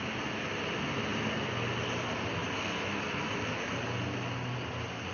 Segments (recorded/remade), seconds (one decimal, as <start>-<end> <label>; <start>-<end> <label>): 0.0-1.1 recorded; 1.1-1.7 remade; 1.7-2.4 recorded; 2.4-3.4 remade; 3.4-5.1 recorded